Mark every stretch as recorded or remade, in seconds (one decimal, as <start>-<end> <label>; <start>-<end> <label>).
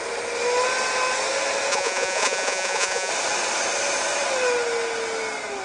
0.0-1.7 recorded; 1.7-3.1 remade; 3.1-5.6 recorded